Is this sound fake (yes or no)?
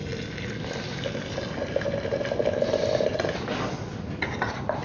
no